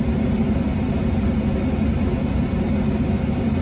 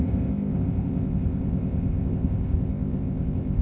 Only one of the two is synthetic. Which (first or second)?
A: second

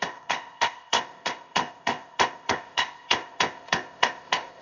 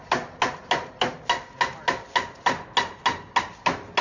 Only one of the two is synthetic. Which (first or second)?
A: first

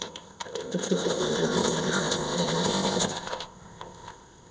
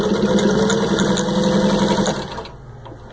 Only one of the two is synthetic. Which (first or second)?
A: first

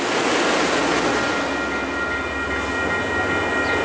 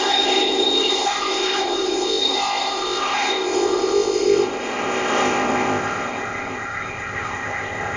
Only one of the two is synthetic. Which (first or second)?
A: second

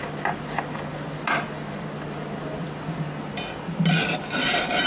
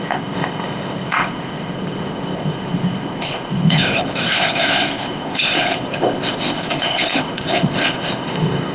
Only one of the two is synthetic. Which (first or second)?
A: second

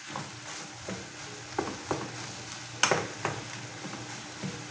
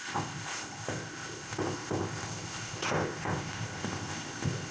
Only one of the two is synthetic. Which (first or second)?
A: second